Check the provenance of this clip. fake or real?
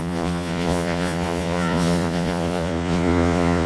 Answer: fake